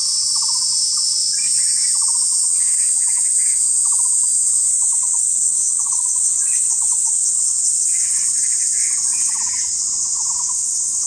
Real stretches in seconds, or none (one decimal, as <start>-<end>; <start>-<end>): 0.0-5.0; 9.4-11.1